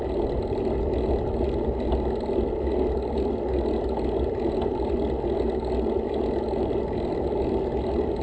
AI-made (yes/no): no